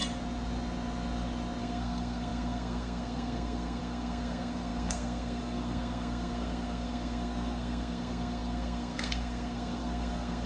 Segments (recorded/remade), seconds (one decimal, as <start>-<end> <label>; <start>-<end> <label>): 0.0-1.6 recorded; 1.6-10.5 remade